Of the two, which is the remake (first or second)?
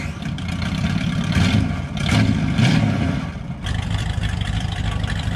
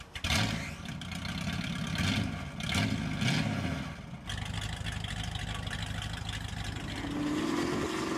first